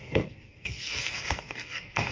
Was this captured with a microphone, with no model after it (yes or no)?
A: no